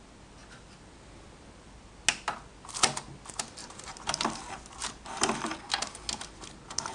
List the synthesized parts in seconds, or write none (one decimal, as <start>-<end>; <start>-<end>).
3.6-5.6